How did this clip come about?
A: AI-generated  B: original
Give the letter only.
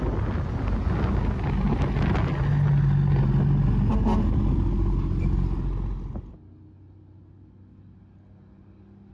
B